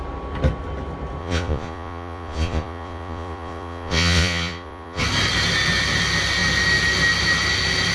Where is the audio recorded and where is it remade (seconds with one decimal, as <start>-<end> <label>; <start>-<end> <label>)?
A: 0.0-1.2 recorded; 1.2-5.0 remade; 5.0-7.9 recorded